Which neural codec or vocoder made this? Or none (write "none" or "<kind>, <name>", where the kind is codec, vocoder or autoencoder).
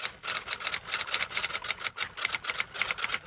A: none